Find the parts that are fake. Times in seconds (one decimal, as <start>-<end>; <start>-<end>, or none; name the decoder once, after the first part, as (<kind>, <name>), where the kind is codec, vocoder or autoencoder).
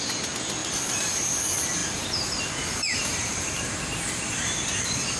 0.6-1.3 (vocoder, BigVGAN v2); 1.8-3.7